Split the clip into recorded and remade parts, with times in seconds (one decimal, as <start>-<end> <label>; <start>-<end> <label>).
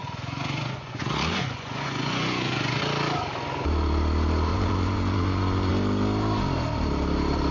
0.0-2.8 remade; 2.8-4.5 recorded; 4.5-5.7 remade; 5.7-7.5 recorded